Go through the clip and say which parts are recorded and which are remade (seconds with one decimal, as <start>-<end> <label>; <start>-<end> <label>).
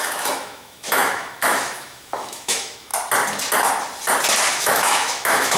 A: 0.0-2.9 remade; 2.9-4.5 recorded; 4.5-5.6 remade